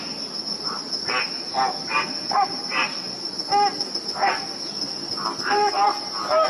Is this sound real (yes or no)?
yes